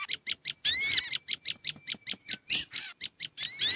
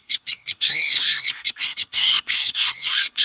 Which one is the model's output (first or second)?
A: second